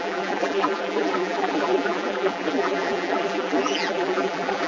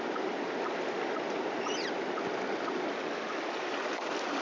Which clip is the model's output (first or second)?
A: first